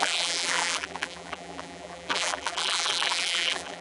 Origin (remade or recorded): remade